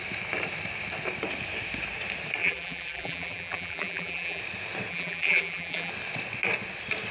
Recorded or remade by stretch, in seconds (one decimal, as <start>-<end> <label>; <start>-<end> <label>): 0.0-2.4 recorded; 2.4-4.4 remade; 4.4-4.9 recorded; 4.9-5.9 remade; 5.9-7.1 recorded